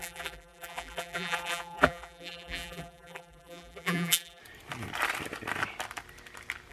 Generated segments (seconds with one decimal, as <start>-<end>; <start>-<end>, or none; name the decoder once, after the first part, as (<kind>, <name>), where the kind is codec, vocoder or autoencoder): 0.0-4.4 (vocoder, BigVGAN v2)